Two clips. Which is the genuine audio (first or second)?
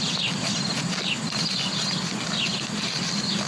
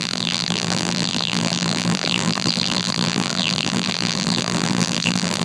first